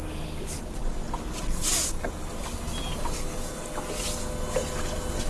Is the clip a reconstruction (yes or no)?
no